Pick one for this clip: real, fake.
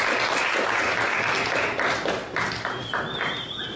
real